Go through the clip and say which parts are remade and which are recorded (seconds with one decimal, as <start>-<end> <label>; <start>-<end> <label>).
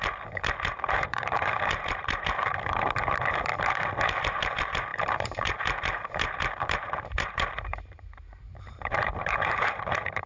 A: 0.0-3.5 remade; 3.5-4.2 recorded; 4.2-10.3 remade